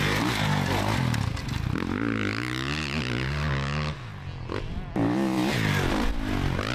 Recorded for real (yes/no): yes